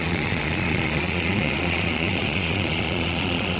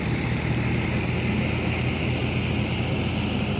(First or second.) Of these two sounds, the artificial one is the first